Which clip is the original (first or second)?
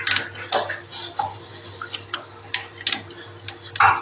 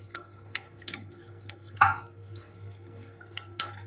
first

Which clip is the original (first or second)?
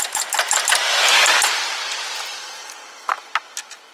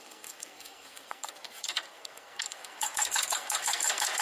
first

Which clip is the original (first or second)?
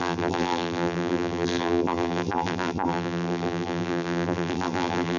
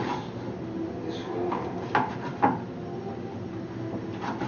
second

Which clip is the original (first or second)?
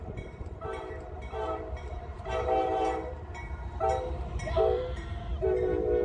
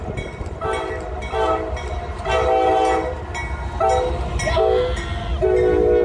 second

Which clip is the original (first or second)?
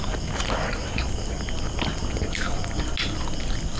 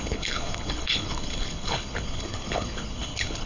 first